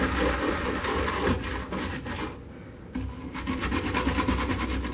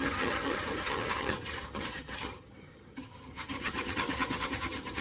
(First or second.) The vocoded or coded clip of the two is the second